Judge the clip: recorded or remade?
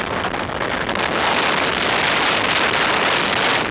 recorded